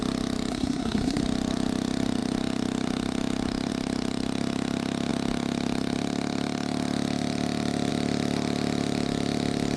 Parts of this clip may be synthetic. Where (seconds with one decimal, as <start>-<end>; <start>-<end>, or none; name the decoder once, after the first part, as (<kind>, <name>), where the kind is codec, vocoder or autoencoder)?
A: 0.5-1.2 (codec, SNAC)